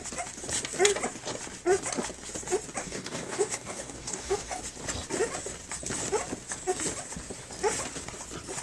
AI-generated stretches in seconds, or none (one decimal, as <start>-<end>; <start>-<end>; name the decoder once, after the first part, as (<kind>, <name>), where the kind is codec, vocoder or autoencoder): 2.8-4.6 (codec, DAC)